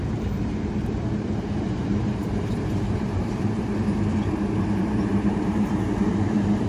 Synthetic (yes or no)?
yes